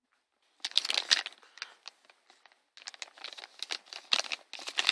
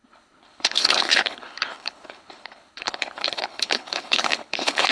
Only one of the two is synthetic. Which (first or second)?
second